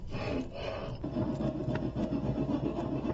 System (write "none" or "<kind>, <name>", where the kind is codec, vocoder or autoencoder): none